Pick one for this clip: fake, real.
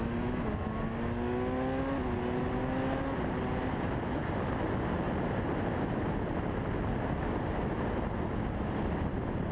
real